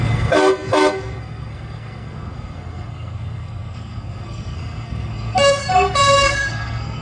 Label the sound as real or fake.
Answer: fake